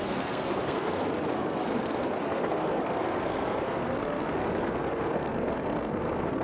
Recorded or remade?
remade